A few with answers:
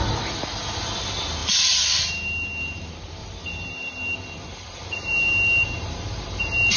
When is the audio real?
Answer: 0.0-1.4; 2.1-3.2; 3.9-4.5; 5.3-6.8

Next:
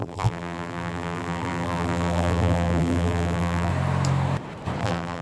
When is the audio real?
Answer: 3.7-4.8

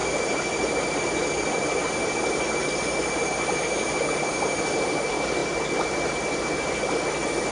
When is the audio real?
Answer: 0.0-7.5

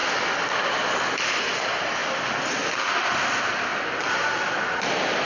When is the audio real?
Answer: 0.0-5.2